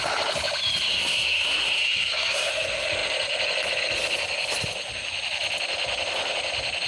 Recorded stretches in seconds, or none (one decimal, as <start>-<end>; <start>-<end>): 0.0-0.9; 2.5-6.9